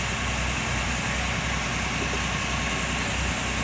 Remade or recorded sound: recorded